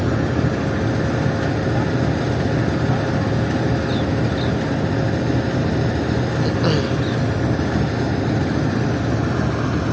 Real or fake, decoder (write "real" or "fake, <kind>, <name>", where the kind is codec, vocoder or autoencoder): real